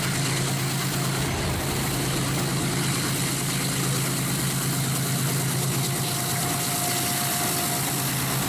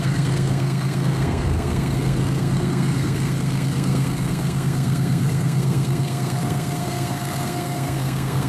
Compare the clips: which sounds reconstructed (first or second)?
second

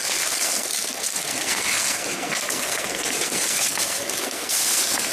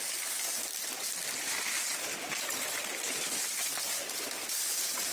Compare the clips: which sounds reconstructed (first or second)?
first